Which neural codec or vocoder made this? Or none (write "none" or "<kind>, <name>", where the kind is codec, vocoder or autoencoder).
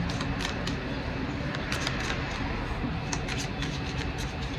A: none